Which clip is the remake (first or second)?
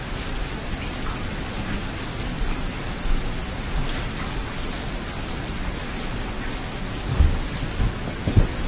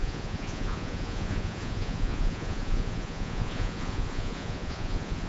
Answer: second